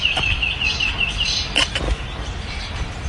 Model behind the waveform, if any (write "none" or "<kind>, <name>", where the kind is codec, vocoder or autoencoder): none